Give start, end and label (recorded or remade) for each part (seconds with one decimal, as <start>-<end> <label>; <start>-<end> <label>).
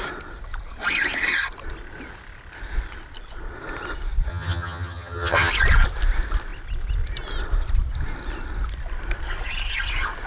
0.0-4.3 recorded; 4.3-5.5 remade; 5.5-10.3 recorded